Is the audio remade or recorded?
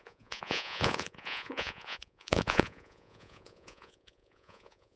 remade